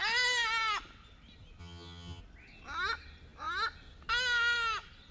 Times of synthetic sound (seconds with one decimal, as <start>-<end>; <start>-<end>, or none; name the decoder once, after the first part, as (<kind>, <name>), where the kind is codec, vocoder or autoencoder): 1.6-2.2 (vocoder, HiFi-GAN)